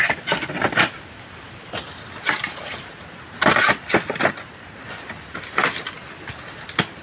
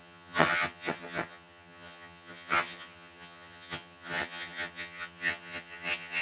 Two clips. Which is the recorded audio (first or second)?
first